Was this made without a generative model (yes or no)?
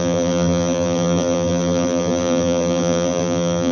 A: no